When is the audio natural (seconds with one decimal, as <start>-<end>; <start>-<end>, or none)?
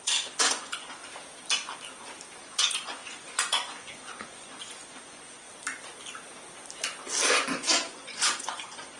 1.0-2.4; 5.5-7.3